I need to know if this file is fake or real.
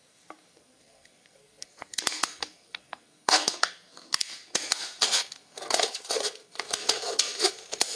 fake